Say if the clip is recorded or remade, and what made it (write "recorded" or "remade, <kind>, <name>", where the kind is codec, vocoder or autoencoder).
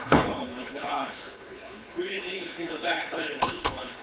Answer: remade, codec, HILCodec